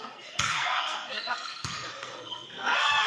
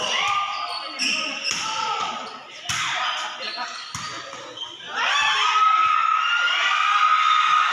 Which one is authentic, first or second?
second